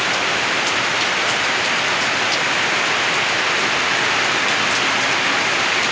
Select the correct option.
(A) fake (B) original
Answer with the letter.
B